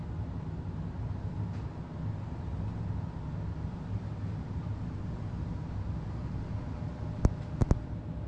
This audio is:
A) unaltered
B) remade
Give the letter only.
A